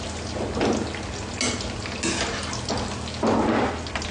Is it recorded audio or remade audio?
recorded